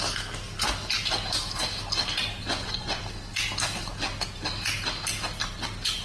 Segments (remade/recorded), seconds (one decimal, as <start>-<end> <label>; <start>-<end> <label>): 0.0-2.4 recorded; 2.4-3.0 remade; 3.0-6.0 recorded